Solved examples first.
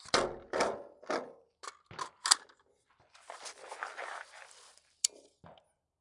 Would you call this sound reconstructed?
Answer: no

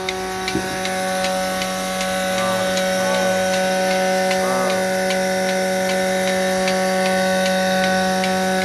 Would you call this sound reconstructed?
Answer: no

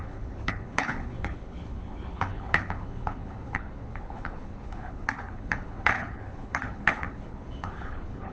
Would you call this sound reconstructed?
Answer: yes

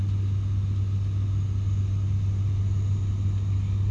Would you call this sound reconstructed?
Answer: no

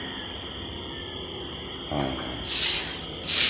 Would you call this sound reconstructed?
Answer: no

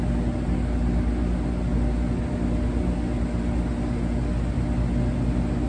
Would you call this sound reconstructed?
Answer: no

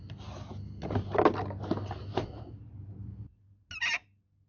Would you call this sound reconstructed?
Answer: no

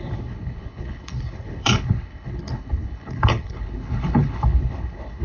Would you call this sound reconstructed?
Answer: yes